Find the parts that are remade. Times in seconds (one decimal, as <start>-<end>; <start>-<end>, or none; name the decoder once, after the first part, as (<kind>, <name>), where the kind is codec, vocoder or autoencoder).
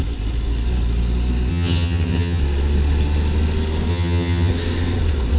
1.5-2.4 (vocoder, HiFi-GAN); 3.9-4.5